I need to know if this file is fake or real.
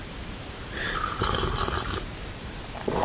fake